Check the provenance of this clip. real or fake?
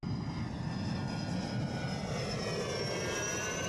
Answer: real